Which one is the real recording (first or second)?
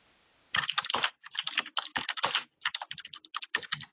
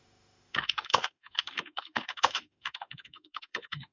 first